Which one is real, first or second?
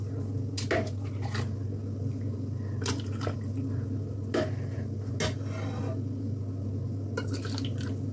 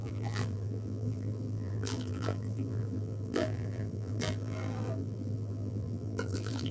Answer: first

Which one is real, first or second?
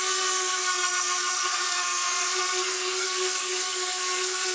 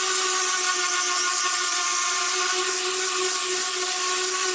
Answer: second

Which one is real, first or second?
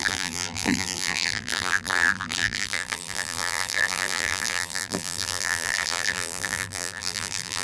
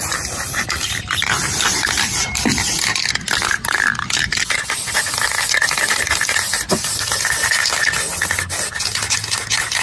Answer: second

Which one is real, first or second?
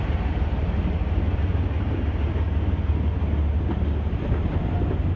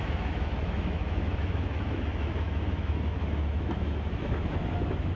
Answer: first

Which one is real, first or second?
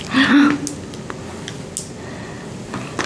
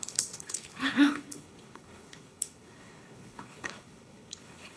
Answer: first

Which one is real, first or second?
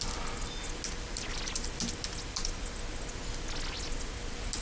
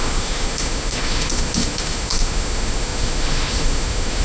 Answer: first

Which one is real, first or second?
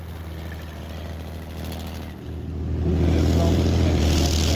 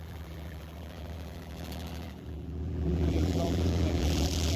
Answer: first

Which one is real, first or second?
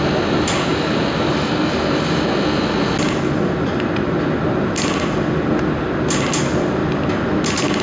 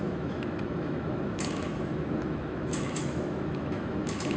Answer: first